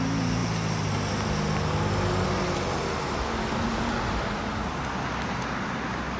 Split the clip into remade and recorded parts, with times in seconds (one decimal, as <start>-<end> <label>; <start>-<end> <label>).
0.0-6.2 recorded